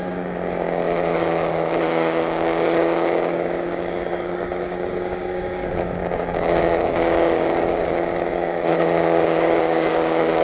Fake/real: fake